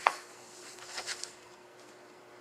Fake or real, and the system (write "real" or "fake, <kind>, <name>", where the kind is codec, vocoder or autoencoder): fake, codec, SNAC